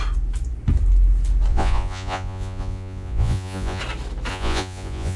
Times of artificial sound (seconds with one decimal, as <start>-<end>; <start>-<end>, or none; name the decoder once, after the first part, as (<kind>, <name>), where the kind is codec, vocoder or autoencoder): 1.5-3.8 (vocoder, Vocos); 4.3-5.2